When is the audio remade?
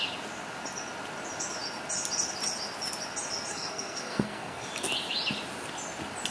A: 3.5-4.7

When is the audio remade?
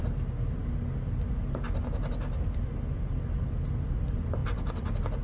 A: none